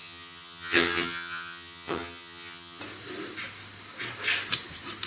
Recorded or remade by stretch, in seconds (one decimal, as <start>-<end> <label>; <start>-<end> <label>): 0.0-2.8 remade; 2.8-5.1 recorded